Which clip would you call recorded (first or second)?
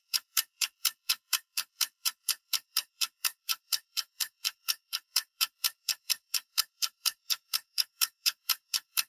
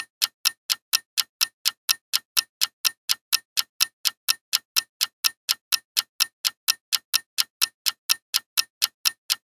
second